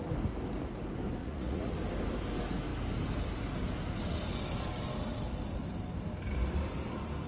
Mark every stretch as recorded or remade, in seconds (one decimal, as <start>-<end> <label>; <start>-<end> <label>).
0.0-1.2 recorded; 1.2-1.7 remade; 1.7-7.3 recorded